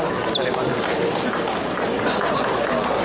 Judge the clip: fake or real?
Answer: real